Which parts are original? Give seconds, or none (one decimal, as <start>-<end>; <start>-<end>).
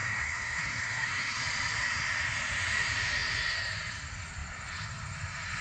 1.4-5.6